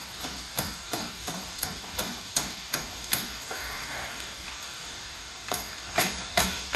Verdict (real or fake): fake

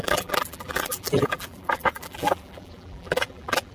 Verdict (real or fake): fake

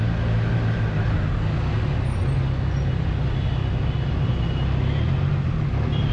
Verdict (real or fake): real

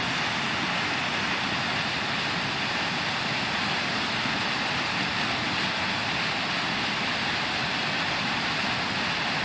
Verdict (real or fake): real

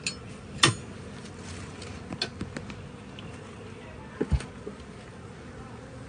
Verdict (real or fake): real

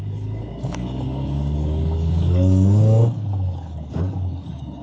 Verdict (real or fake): fake